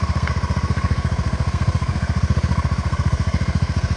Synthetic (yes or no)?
yes